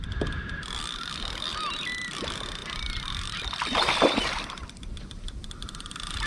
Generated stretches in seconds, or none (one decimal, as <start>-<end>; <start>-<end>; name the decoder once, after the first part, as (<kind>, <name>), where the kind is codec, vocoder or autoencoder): none